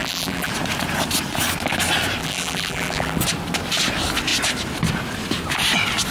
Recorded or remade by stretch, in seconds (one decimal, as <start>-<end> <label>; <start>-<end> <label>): 0.0-0.5 remade; 0.5-2.2 recorded; 2.2-3.2 remade; 3.2-6.1 recorded